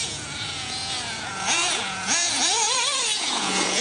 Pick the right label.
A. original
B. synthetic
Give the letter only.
B